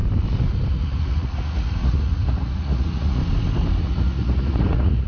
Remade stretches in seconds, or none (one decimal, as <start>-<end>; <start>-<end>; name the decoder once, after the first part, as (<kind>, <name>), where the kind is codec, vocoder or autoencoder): 0.7-3.2 (vocoder, Vocos); 3.8-5.1